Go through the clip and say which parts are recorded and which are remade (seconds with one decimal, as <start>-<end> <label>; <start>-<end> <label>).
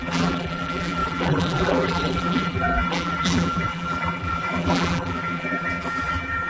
0.0-6.5 remade